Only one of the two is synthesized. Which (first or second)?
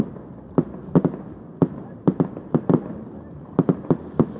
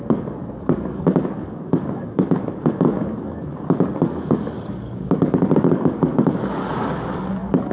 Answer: second